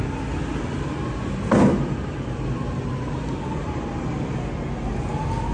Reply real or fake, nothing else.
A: real